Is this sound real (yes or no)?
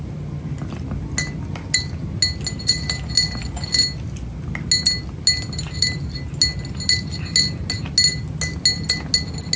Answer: yes